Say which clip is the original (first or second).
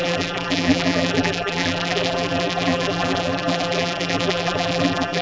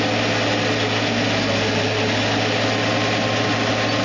second